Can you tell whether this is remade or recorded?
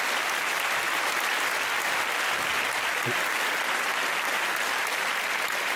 recorded